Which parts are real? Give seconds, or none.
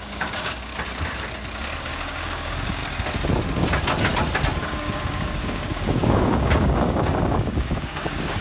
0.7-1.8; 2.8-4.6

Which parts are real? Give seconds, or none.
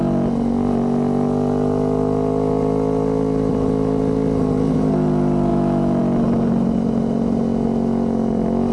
0.0-5.5; 6.0-8.7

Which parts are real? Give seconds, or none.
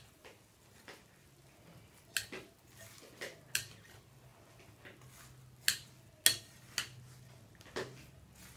0.0-8.6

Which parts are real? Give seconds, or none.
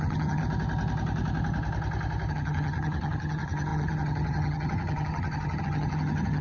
0.4-2.3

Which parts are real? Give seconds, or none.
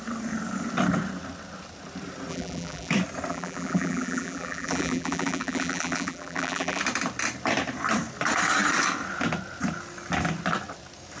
0.0-2.3; 2.9-3.3; 6.8-11.2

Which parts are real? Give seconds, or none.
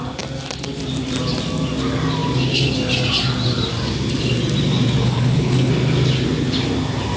0.0-5.0; 5.7-7.2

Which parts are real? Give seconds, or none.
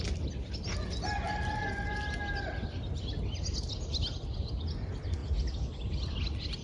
0.0-6.6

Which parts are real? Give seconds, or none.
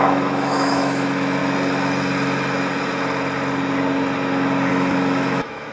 1.4-4.7